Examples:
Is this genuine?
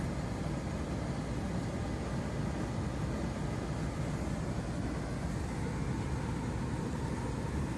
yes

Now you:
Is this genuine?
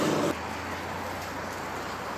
yes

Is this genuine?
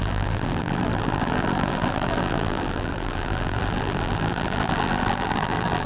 no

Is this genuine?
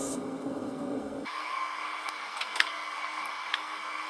no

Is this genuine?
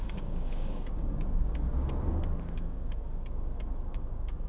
no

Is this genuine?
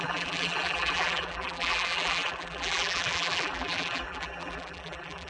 no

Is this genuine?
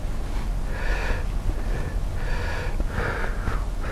yes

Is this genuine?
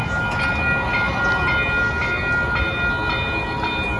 yes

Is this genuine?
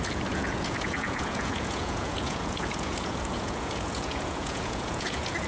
no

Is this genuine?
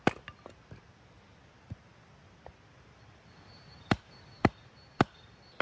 yes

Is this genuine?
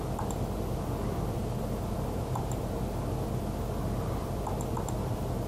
yes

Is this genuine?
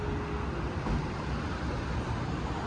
yes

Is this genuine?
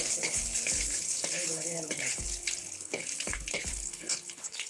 no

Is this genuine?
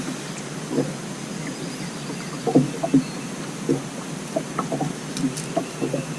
yes